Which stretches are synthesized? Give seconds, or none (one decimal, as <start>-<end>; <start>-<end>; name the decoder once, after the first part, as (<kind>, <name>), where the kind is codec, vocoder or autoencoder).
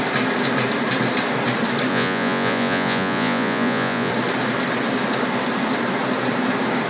1.9-4.1 (vocoder, Vocos)